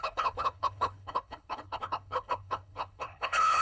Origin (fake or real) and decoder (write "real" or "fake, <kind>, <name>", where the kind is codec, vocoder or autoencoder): fake, codec, HILCodec